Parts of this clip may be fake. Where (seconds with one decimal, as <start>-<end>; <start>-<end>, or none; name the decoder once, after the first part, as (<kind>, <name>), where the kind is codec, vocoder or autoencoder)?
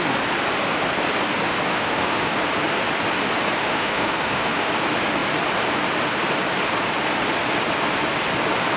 1.7-2.3 (autoencoder, DAC-VAE); 3.6-4.7